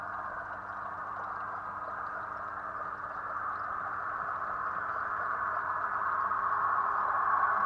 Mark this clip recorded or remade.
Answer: recorded